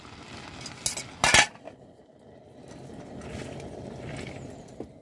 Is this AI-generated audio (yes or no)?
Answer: no